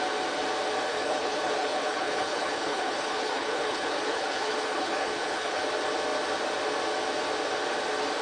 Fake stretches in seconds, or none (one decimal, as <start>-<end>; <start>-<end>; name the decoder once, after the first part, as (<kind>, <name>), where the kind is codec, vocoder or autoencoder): 0.9-5.6 (codec, HILCodec)